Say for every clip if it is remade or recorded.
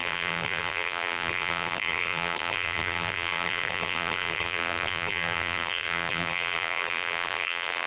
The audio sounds remade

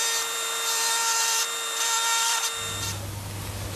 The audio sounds remade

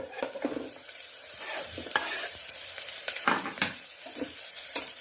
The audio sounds remade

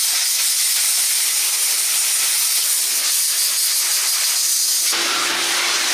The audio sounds remade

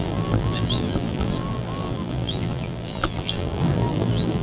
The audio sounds remade